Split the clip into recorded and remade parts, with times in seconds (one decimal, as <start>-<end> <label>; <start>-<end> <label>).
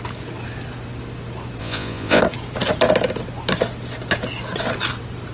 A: 0.0-1.6 recorded; 1.6-2.2 remade; 2.2-5.3 recorded